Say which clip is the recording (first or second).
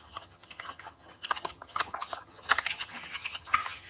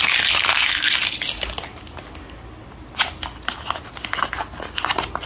second